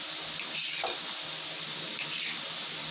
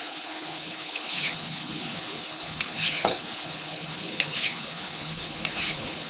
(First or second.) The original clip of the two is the first